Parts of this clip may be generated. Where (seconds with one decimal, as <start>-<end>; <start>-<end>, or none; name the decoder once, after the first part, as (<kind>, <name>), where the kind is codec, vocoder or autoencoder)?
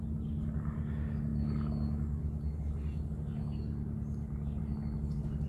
none